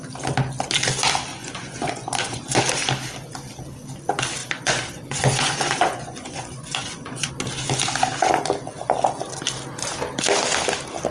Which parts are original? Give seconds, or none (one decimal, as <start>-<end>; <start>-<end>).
0.0-1.3; 2.6-4.4; 7.3-11.1